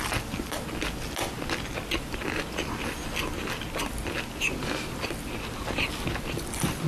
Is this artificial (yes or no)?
no